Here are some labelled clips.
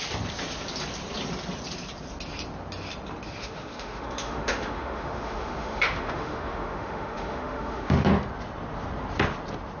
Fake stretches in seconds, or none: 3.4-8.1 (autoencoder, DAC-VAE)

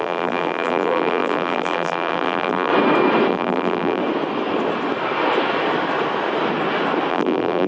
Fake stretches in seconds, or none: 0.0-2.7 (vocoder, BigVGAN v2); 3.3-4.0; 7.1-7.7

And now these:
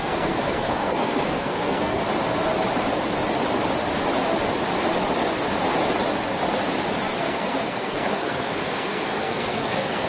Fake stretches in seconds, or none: 0.0-2.0 (codec, SNAC); 7.2-10.1

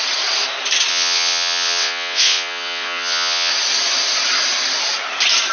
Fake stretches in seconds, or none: 0.9-3.5 (vocoder, WaveNeXt)

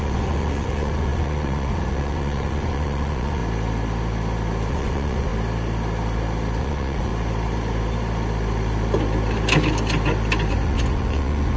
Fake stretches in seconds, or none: 0.0-3.4 (vocoder, Vocos); 4.7-5.3; 6.6-7.1; 10.5-11.6

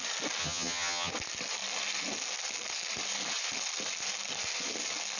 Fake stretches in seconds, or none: 0.4-1.1 (vocoder, HiFi-GAN)

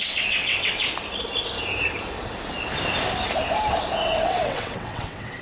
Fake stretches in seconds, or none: 0.0-0.8 (vocoder, WaveNeXt); 4.0-5.4

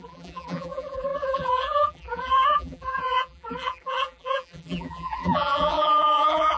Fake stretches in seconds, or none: 0.0-6.6 (vocoder, BigVGAN v2)